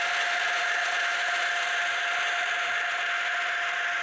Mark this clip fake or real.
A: real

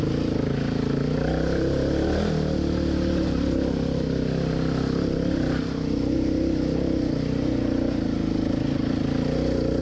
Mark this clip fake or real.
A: real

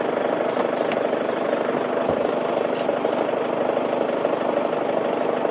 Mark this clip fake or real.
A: real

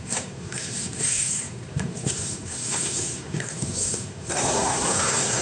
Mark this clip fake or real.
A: fake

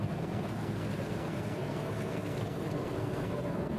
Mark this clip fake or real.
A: fake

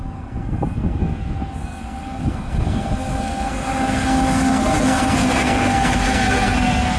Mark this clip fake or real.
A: fake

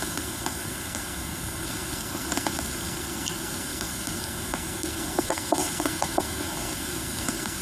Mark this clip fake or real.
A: fake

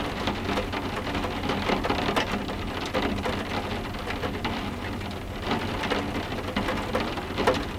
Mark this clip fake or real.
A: real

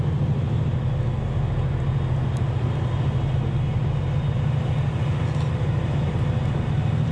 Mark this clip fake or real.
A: real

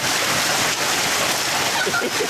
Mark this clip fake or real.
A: real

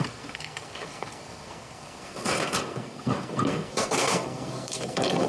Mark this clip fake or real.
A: fake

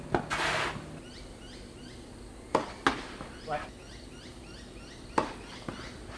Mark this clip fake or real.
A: real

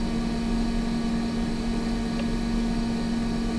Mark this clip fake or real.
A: real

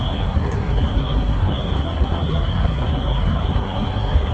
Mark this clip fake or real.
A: fake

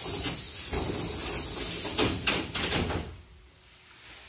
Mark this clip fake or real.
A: real